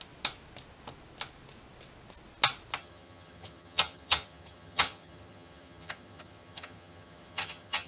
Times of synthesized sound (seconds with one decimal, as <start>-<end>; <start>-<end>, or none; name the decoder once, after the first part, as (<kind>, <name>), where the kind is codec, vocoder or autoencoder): 2.8-7.9 (vocoder, HiFi-GAN)

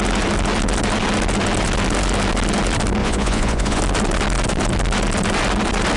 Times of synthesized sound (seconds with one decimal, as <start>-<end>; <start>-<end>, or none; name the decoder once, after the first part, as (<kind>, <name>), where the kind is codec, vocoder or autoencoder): 3.0-3.8 (vocoder, Vocos)

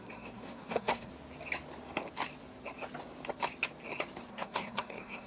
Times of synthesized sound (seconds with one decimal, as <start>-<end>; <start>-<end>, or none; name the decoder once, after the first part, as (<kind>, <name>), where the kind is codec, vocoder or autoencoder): 0.0-1.1 (codec, SNAC); 4.3-5.3

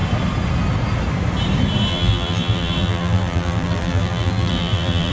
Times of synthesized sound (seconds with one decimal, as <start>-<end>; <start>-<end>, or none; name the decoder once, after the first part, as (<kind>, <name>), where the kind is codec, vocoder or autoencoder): 1.9-5.1 (vocoder, BigVGAN v2)

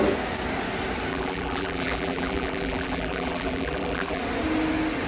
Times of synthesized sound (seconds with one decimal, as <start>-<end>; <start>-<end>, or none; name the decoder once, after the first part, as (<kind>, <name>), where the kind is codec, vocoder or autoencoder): 1.1-4.2 (vocoder, BigVGAN v2)

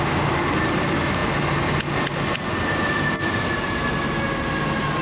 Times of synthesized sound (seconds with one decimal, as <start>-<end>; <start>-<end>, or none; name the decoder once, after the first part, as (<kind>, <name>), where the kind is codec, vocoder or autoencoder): none